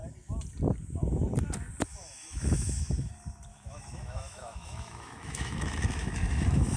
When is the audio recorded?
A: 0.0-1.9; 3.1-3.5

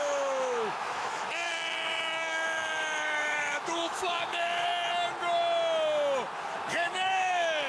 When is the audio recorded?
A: 4.7-6.7

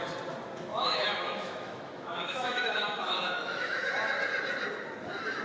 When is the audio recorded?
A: 0.0-0.7; 3.9-5.4

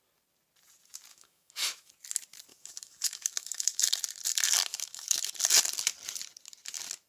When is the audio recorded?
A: 0.0-1.1; 1.9-2.5; 3.9-4.7; 5.3-7.1

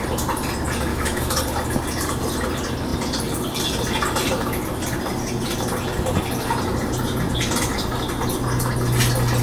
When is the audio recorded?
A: 0.0-0.9; 1.4-9.4

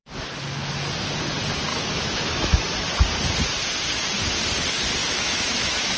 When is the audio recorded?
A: 0.0-1.7; 2.9-5.0

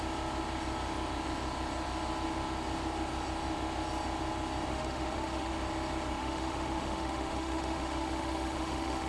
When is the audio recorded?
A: 0.0-4.7; 5.5-6.2

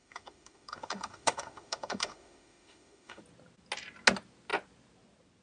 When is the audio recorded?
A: 3.2-5.4